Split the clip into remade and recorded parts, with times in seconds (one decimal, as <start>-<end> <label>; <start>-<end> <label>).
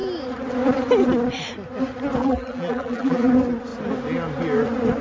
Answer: 0.0-2.2 recorded; 2.2-3.3 remade; 3.3-5.0 recorded